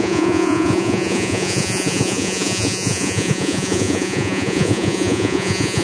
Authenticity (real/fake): fake